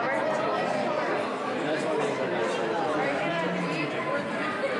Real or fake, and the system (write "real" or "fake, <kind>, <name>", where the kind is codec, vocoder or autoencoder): real